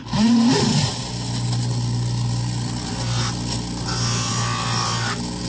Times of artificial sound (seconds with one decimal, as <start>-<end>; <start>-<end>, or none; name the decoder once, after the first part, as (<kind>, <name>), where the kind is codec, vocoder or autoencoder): none